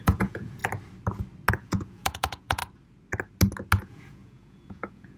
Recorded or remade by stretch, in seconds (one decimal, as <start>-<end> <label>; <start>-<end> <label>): 0.0-0.6 remade; 0.6-1.5 recorded; 1.5-2.6 remade; 2.6-3.8 recorded; 3.8-5.2 remade